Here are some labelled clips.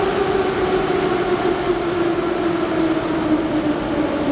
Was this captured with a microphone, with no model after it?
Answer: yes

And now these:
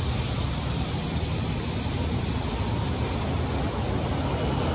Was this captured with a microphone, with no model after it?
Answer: yes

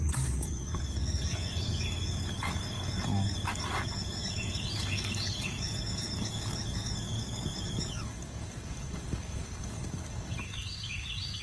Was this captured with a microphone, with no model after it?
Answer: no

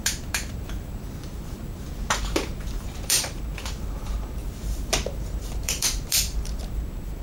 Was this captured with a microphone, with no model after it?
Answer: no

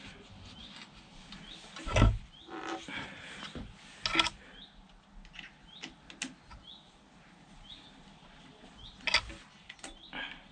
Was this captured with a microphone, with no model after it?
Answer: yes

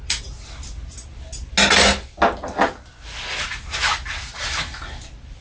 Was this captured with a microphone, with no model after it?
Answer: yes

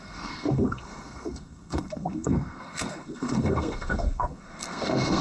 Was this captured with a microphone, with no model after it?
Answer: no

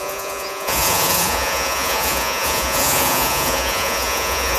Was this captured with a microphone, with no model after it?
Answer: no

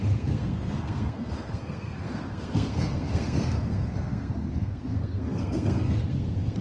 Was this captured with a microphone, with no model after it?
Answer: no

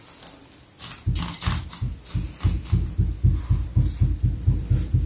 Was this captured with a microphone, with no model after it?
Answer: yes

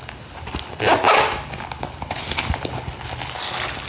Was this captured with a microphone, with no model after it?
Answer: yes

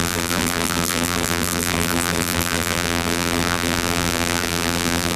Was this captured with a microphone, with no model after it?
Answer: no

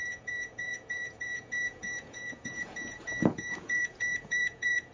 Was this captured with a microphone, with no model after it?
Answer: no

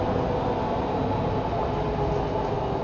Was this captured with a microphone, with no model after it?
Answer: yes